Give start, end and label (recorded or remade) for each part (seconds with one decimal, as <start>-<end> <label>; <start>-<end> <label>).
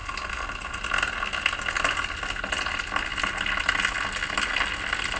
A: 0.0-5.2 recorded